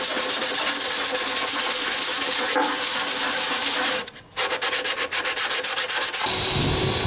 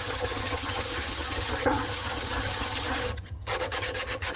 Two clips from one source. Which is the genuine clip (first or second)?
first